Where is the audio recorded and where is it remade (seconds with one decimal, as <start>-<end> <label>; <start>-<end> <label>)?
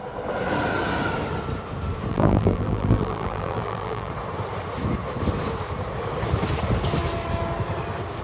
0.0-2.1 recorded; 2.1-4.1 remade; 4.1-8.2 recorded